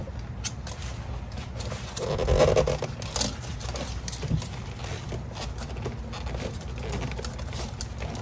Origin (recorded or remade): recorded